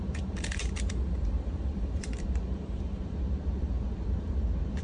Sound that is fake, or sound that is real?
fake